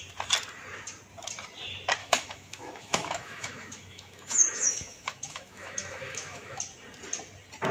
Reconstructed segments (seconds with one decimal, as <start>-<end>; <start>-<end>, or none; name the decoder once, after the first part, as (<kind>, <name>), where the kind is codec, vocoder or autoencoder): 2.0-6.6 (autoencoder, DAC-VAE)